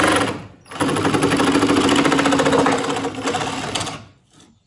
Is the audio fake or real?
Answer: real